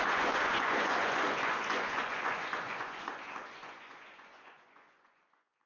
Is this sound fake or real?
fake